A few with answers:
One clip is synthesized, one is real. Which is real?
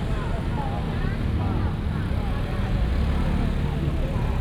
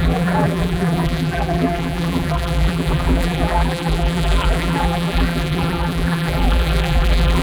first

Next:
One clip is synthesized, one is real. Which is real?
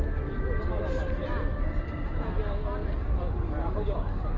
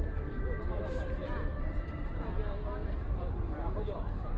first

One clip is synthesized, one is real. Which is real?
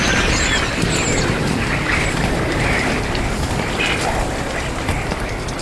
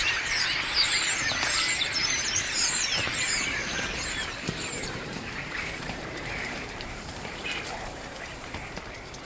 first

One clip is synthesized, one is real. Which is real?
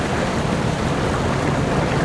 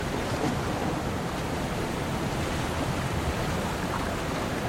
first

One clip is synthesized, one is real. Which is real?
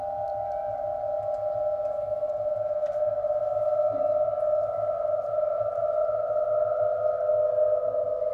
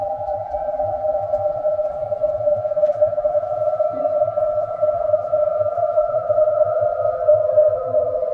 first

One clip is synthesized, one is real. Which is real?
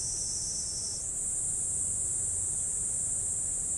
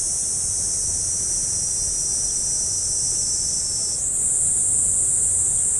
second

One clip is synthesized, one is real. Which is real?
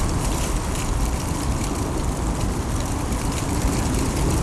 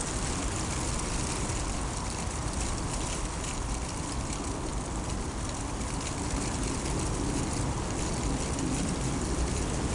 second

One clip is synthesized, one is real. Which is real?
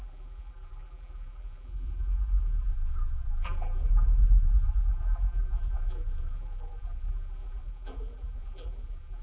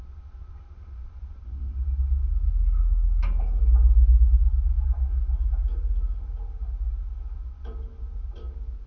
second